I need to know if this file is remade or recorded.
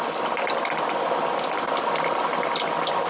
recorded